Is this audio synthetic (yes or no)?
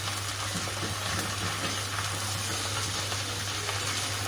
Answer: no